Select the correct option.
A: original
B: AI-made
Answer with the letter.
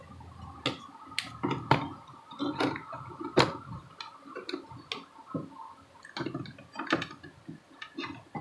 A